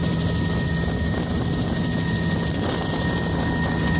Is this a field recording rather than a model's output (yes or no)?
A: yes